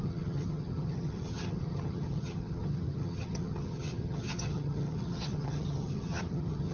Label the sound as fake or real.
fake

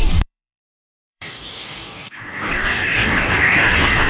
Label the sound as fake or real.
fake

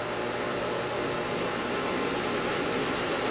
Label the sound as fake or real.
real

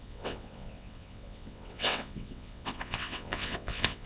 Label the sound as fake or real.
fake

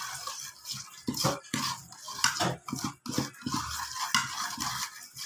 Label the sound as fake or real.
real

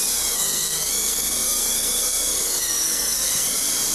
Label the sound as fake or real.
fake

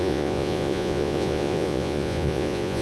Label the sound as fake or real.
fake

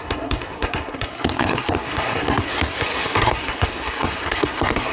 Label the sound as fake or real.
fake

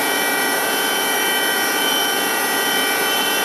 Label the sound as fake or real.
fake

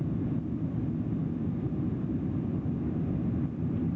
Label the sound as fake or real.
real